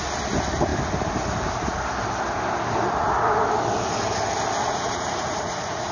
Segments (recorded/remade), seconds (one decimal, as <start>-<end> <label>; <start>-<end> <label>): 0.0-4.6 recorded; 4.6-5.9 remade